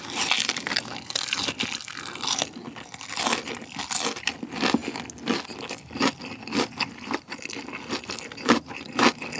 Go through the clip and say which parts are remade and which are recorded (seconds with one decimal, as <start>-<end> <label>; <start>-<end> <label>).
0.0-9.4 recorded